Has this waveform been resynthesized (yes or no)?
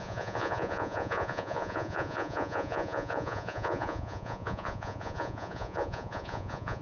yes